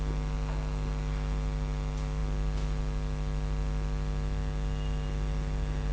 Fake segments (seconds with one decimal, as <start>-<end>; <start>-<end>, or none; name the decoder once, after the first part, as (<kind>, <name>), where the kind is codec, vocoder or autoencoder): none